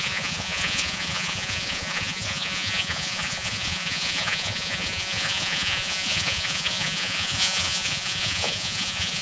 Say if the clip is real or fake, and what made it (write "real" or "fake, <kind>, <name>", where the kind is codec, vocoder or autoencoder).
fake, vocoder, Vocos